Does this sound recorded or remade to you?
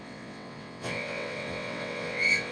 remade